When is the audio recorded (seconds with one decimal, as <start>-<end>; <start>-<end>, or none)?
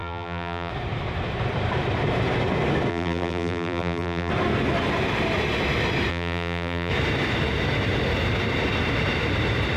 0.7-2.9; 4.3-6.1; 6.9-9.8